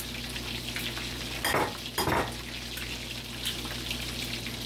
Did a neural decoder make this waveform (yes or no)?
no